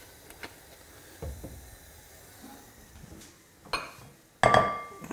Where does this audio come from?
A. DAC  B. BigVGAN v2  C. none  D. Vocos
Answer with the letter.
C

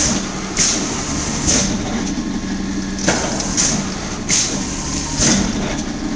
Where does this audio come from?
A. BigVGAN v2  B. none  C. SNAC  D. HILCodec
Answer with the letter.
B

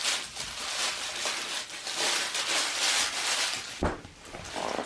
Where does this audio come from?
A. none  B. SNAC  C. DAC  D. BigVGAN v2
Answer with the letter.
D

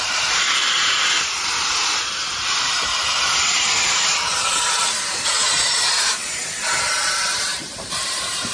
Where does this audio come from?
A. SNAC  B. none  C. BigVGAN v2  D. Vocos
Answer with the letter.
C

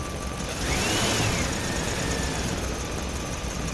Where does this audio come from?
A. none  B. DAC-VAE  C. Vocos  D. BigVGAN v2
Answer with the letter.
A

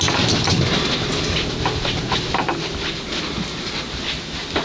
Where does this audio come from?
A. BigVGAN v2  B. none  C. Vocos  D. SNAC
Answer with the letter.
B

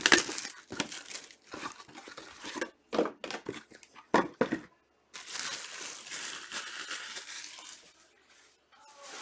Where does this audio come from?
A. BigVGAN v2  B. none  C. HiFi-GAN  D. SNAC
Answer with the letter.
B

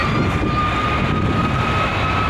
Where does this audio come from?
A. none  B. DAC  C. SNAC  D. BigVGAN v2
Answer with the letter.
A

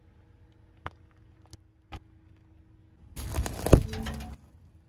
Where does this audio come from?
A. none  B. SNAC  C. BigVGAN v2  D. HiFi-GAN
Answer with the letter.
A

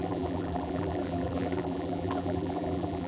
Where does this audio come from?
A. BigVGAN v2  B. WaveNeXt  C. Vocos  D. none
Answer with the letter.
A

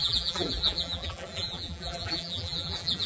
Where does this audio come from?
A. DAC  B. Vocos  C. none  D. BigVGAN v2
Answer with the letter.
D